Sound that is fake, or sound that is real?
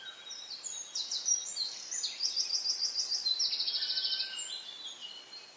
real